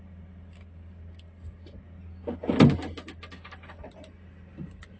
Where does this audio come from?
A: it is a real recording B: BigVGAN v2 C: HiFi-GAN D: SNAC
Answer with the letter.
A